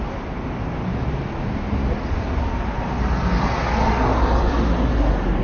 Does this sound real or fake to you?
real